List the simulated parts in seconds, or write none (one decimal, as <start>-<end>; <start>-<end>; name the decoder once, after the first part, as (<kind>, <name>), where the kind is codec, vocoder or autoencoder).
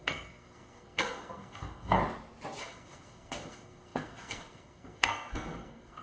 0.0-2.0 (codec, SNAC); 2.6-6.0